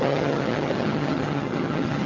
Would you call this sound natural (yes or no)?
no